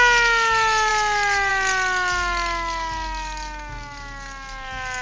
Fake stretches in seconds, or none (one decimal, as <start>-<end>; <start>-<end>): none